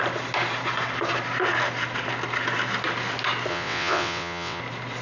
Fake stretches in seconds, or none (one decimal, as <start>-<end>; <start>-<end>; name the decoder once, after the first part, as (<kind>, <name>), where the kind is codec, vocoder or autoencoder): 3.5-4.6 (vocoder, WaveNeXt)